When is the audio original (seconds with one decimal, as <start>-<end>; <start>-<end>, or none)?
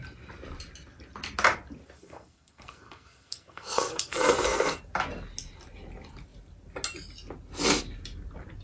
0.0-2.0; 4.8-8.6